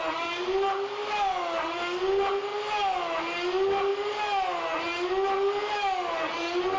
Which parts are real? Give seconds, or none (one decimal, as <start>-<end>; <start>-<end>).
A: 0.0-6.8

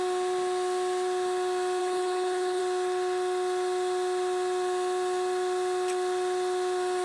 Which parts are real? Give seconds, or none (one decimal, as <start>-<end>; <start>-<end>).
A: 0.0-1.8; 2.6-7.0

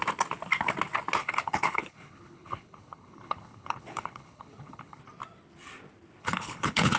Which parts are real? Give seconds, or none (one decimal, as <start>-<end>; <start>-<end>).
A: 0.0-1.2; 5.0-6.2

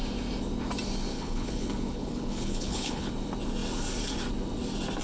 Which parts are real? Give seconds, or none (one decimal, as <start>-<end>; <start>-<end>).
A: 0.0-1.1; 3.1-5.0

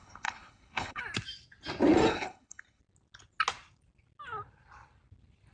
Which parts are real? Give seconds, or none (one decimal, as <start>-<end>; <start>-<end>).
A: 1.0-2.1; 2.8-5.5